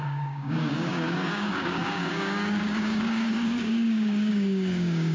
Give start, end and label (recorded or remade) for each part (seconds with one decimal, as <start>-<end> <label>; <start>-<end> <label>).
0.0-5.1 remade